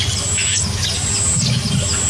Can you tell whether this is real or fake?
real